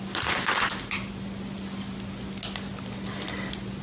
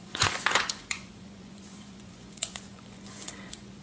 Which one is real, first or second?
first